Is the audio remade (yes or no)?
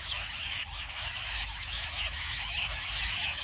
yes